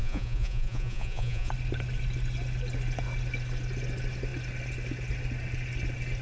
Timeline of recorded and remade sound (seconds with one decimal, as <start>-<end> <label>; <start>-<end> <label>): 0.0-1.5 remade; 1.5-6.2 recorded